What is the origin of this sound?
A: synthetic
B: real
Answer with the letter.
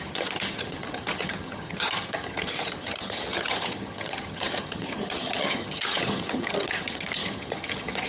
A